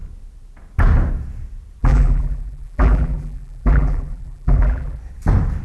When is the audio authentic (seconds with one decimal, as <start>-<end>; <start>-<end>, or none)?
0.0-1.8; 5.0-5.6